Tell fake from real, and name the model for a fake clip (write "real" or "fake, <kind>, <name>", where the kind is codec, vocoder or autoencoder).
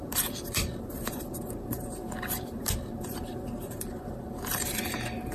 fake, vocoder, BigVGAN v2